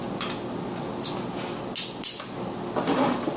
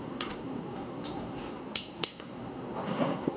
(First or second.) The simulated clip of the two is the second